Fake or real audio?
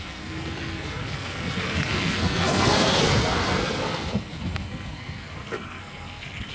fake